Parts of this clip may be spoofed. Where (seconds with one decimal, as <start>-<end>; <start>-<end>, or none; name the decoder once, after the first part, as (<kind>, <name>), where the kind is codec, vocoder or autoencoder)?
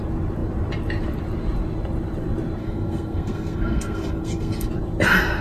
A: 2.6-4.7 (codec, SNAC)